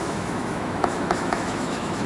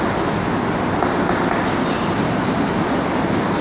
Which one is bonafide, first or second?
second